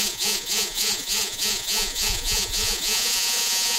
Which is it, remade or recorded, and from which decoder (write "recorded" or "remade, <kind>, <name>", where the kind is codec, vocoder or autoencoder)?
remade, vocoder, Vocos